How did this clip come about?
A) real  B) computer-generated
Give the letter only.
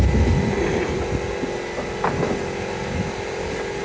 A